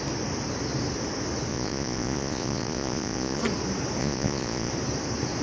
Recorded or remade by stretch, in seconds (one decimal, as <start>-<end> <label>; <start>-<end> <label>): 0.0-1.5 recorded; 1.5-3.4 remade; 3.4-4.0 recorded; 4.0-4.7 remade; 4.7-5.4 recorded